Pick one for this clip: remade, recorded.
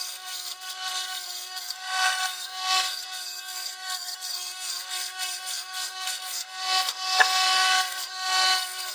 remade